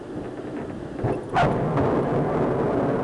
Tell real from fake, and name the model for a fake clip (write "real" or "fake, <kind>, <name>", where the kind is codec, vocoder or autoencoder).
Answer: real